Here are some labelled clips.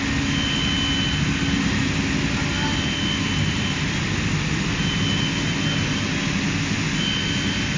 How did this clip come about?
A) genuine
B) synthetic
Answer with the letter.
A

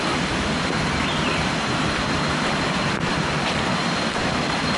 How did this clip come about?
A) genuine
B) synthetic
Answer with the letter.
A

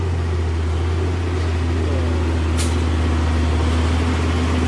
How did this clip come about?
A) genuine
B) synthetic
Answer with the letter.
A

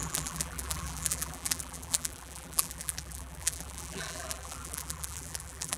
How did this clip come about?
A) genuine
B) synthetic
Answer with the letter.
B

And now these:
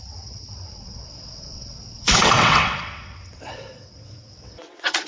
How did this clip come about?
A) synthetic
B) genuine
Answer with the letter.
A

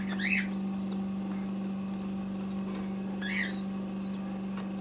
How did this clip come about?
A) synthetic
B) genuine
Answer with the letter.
B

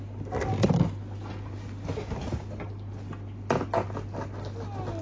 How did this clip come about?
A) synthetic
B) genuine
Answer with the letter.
B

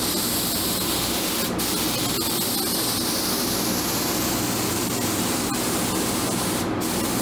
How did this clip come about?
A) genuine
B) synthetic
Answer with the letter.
A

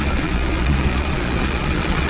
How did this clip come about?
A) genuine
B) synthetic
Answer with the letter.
B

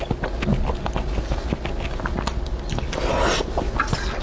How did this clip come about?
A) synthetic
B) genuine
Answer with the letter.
B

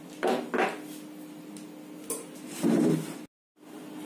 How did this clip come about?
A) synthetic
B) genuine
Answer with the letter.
B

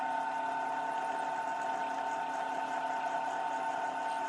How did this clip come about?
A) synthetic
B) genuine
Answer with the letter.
B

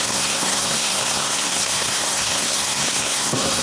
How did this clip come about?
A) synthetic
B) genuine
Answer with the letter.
A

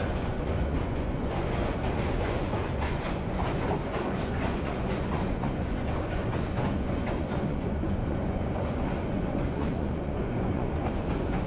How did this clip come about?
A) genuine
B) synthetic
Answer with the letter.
B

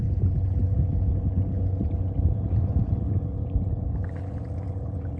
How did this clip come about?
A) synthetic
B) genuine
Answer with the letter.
B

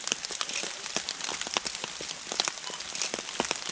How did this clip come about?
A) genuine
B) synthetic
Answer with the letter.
A